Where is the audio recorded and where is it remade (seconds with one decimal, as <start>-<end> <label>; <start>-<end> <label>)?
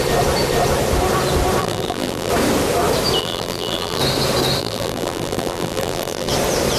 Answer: 0.0-1.6 recorded; 1.6-2.3 remade; 2.3-3.2 recorded; 3.2-4.0 remade; 4.0-4.6 recorded; 4.6-6.3 remade; 6.3-6.8 recorded